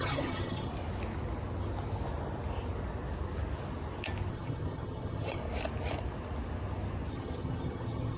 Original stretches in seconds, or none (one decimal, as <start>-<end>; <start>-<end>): 0.7-4.3; 5.4-7.1